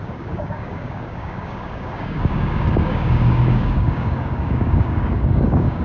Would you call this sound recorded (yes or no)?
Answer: no